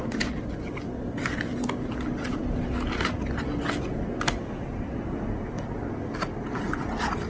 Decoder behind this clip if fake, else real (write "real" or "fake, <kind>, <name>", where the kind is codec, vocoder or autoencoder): real